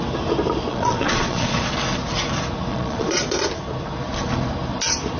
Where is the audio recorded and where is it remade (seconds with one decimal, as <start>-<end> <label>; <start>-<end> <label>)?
0.0-0.7 recorded; 0.7-1.7 remade; 1.7-2.7 recorded; 2.7-3.4 remade; 3.4-5.2 recorded